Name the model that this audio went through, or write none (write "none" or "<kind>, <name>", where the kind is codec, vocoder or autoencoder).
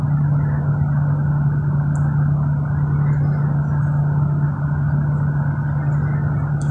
none